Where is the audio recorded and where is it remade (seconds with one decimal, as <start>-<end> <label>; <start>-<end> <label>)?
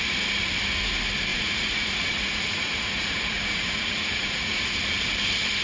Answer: 0.0-1.3 recorded; 1.3-4.7 remade; 4.7-5.6 recorded